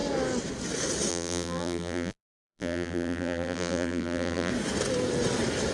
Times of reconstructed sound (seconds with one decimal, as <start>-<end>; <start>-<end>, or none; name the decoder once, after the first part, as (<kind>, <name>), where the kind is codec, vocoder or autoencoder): 1.1-4.5 (vocoder, BigVGAN v2)